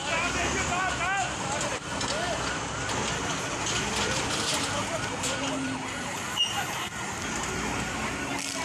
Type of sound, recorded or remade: recorded